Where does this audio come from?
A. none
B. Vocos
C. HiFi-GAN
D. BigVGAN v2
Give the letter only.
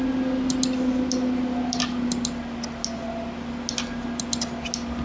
A